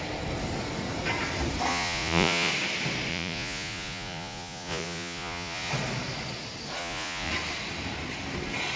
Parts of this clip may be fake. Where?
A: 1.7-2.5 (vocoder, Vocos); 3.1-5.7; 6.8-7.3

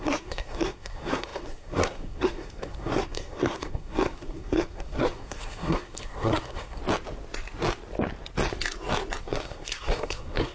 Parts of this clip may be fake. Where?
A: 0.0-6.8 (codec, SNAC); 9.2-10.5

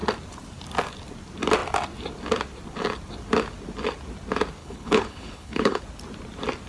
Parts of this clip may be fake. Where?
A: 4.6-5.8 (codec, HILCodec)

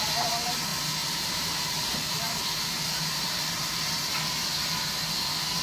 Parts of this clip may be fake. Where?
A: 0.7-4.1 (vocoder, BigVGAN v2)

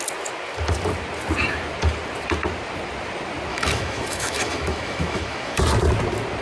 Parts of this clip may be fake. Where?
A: 3.5-5.6 (autoencoder, DAC-VAE)

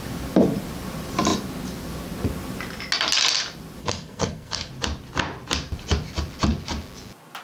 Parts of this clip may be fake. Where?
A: 3.8-4.7 (codec, SNAC)